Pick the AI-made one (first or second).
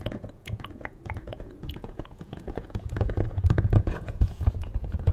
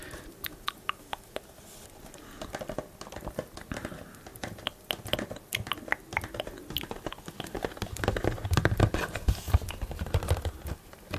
first